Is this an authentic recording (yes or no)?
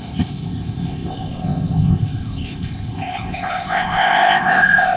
no